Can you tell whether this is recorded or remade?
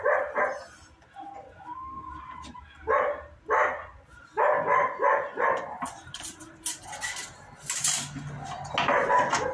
recorded